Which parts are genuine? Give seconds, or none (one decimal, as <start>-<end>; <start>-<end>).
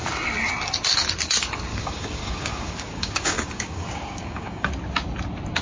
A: 0.0-1.7; 4.7-5.6